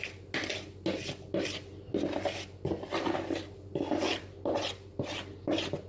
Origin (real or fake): real